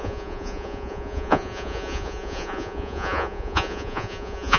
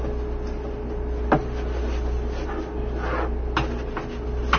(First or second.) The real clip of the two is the second